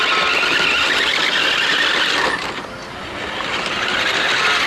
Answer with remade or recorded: recorded